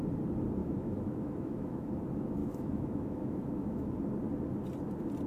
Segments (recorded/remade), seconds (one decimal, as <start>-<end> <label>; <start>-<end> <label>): 0.0-0.6 recorded; 0.6-1.9 remade; 1.9-2.4 recorded; 2.4-3.9 remade; 3.9-5.3 recorded